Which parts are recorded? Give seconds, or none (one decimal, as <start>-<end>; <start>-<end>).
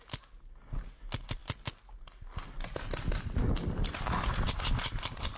0.0-5.4